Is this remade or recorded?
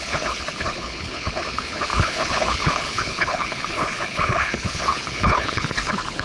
remade